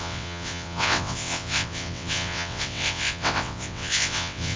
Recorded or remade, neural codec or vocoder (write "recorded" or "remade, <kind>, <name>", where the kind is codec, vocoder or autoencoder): remade, vocoder, WaveNeXt